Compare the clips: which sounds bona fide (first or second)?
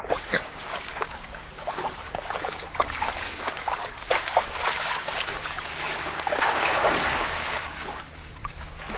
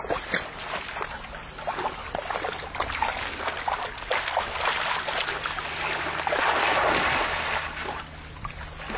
second